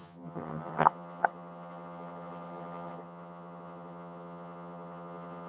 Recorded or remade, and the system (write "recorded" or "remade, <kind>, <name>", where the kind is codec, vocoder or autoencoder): remade, vocoder, HiFi-GAN